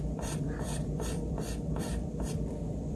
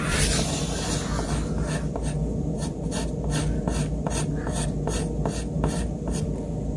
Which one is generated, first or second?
first